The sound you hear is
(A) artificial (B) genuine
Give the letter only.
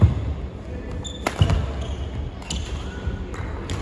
B